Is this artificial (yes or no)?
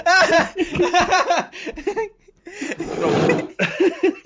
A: yes